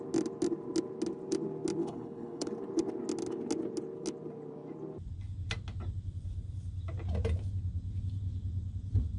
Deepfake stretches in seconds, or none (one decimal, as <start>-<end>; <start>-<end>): 1.8-2.5